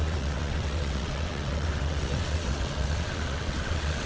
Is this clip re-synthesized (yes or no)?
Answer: yes